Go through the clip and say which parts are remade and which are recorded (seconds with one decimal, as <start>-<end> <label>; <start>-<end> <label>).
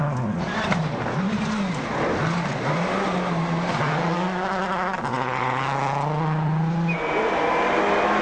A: 0.0-5.1 recorded; 5.1-5.6 remade; 5.6-8.2 recorded